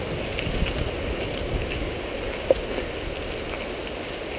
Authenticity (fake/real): real